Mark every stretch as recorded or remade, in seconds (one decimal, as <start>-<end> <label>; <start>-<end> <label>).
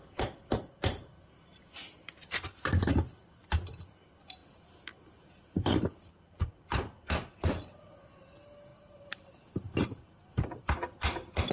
0.0-8.7 recorded; 8.7-10.6 remade; 10.6-11.5 recorded